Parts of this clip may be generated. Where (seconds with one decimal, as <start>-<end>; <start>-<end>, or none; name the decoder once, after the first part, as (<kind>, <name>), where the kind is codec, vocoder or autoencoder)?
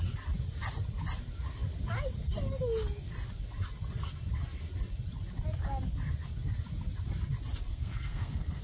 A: 7.7-8.6 (codec, SNAC)